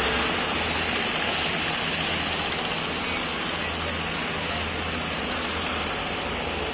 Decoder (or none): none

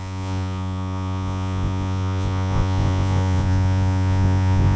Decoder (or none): vocoder, Vocos